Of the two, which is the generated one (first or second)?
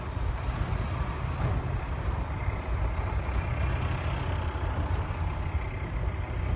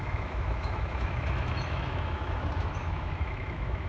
second